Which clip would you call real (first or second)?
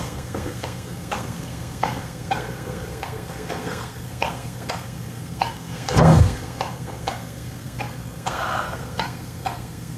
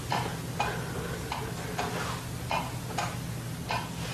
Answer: second